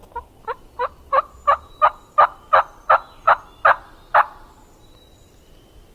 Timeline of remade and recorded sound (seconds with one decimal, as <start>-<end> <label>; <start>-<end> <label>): 0.0-5.9 recorded